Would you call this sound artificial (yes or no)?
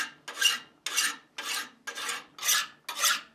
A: no